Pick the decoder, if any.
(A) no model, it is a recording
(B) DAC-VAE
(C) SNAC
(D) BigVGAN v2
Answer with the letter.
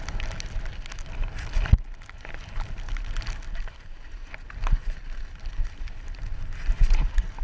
A